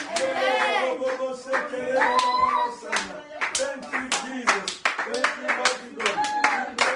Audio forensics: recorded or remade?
recorded